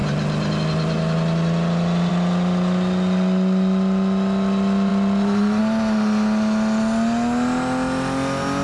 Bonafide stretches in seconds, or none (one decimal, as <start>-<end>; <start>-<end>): 0.0-8.6